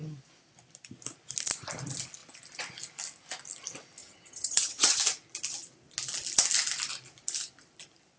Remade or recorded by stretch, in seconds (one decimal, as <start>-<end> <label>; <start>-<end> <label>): 0.0-4.0 recorded; 4.0-5.0 remade; 5.0-8.2 recorded